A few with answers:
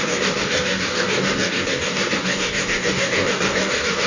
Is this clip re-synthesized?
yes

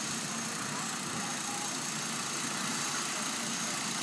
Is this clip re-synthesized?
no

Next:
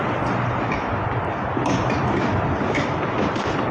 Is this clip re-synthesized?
no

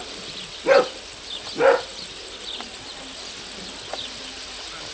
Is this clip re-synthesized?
no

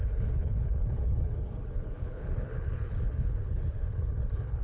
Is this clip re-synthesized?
yes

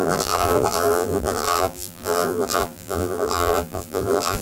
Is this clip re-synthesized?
yes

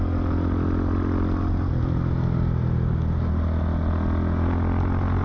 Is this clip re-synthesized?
no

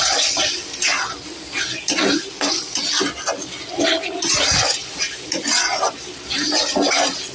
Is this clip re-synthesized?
no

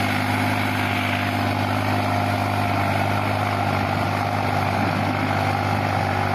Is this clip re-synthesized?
no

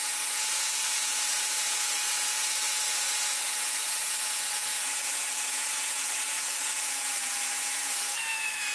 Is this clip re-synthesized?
yes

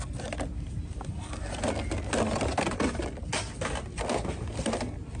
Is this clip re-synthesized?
no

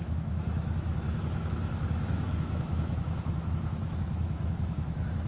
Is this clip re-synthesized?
yes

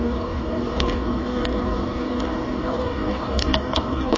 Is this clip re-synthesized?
yes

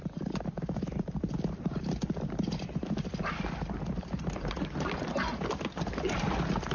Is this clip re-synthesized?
no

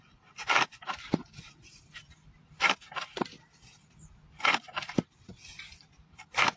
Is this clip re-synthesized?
no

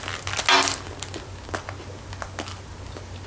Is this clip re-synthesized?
no